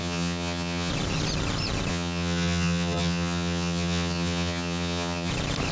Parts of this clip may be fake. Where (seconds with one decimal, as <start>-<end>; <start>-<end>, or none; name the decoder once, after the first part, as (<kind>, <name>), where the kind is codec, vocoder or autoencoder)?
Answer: 0.0-0.9 (vocoder, HiFi-GAN); 1.9-5.3